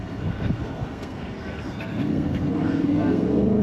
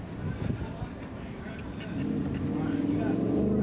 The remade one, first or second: first